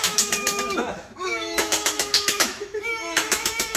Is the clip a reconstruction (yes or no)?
yes